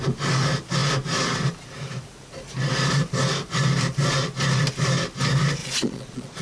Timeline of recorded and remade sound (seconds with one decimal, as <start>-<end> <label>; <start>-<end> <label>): 0.0-5.6 recorded; 5.6-6.4 remade